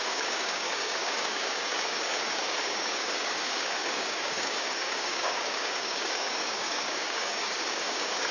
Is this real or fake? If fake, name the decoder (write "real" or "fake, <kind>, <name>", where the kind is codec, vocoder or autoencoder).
fake, codec, DAC